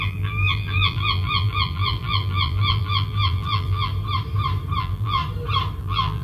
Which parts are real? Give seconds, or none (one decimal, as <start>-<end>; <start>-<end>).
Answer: 3.9-4.8; 5.2-5.8